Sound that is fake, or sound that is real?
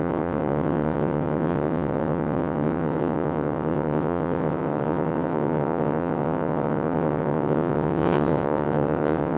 fake